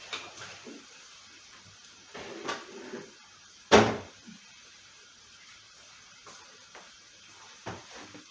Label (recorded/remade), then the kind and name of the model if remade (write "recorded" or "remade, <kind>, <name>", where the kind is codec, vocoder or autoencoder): remade, vocoder, BigVGAN v2